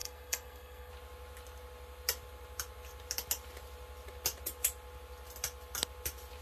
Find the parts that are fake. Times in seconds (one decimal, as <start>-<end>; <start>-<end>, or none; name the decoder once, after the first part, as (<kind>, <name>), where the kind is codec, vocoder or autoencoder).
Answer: 0.0-0.9 (codec, SNAC)